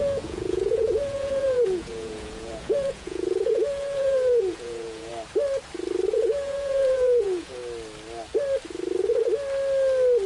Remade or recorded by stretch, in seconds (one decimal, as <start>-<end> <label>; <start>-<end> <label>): 0.0-5.1 remade; 5.1-6.1 recorded; 6.1-7.6 remade; 7.6-10.3 recorded